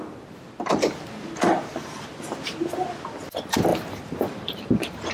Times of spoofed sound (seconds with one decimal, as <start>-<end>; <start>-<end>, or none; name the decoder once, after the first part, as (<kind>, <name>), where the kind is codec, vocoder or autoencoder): 1.5-2.1 (vocoder, BigVGAN v2); 3.7-5.1